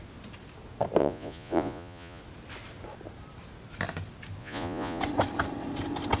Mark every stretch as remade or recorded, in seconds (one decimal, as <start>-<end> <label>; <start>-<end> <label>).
0.0-1.0 recorded; 1.0-2.2 remade; 2.2-4.4 recorded; 4.4-5.0 remade; 5.0-6.2 recorded